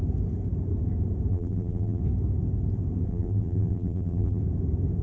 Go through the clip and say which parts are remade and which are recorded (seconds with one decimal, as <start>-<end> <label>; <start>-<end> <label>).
0.0-1.3 recorded; 1.3-2.0 remade; 2.0-3.1 recorded; 3.1-4.4 remade; 4.4-5.0 recorded